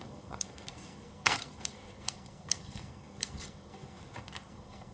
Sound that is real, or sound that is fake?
fake